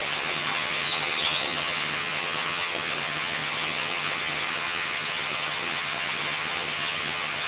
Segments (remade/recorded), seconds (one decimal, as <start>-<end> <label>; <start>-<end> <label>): 0.0-7.5 remade